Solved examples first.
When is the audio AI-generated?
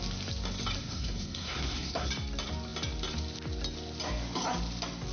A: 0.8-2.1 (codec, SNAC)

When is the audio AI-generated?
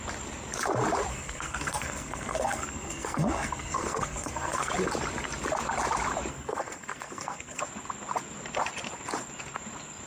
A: 1.1-4.7 (codec, SNAC); 6.3-7.6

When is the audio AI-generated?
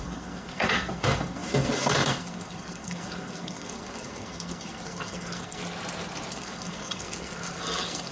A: 0.0-5.6 (codec, SNAC); 6.3-8.1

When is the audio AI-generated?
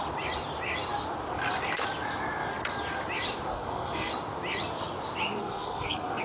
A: 3.5-4.1 (codec, SNAC); 5.4-6.2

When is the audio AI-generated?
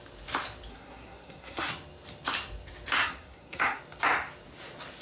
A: 0.7-1.7 (codec, SNAC); 3.0-3.8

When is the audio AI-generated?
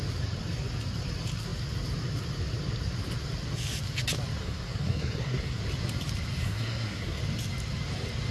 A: 4.4-5.6 (codec, SNAC); 6.4-7.2